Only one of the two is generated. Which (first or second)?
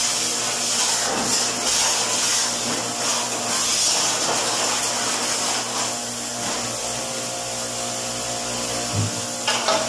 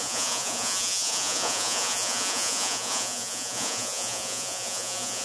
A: second